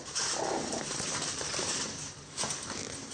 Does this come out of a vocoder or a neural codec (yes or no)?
yes